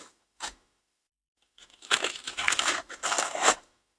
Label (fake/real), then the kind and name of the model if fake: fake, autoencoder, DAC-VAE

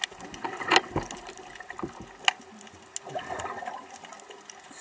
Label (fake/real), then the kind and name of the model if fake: real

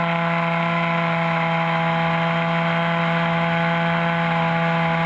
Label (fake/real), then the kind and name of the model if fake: real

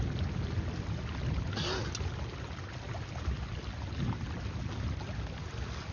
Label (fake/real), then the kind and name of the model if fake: real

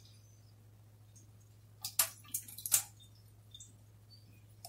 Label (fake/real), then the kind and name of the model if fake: real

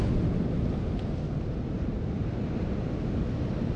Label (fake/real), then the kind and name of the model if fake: real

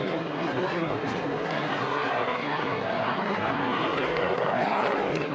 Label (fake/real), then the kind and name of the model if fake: fake, codec, SNAC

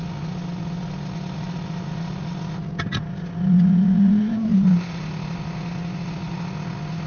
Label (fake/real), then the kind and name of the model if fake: real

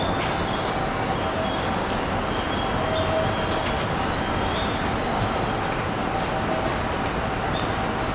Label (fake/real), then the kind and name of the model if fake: real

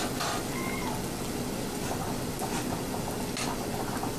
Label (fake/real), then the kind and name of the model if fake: real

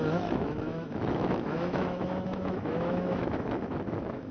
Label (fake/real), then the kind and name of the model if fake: fake, autoencoder, DAC-VAE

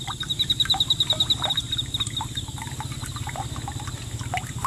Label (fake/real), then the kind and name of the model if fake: real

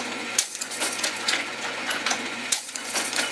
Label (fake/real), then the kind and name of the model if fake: fake, vocoder, Vocos